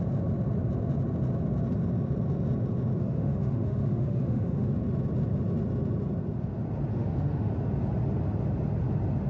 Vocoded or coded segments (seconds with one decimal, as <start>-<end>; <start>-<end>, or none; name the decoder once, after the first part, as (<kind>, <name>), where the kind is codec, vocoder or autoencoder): 3.0-4.7 (autoencoder, DAC-VAE); 6.9-7.5